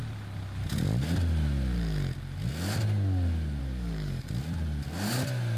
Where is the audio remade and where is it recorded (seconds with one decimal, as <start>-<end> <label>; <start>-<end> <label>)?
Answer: 0.0-3.6 recorded; 3.6-4.3 remade; 4.3-5.6 recorded